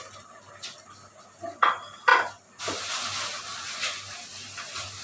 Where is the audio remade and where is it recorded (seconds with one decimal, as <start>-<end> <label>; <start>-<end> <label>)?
0.0-3.5 recorded; 3.5-4.2 remade; 4.2-5.0 recorded